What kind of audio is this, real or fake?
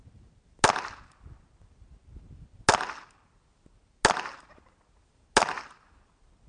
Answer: real